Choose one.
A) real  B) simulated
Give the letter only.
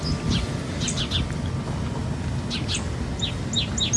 A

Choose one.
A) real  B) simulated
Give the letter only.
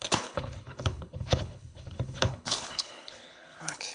B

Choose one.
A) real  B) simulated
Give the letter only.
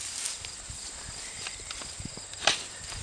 A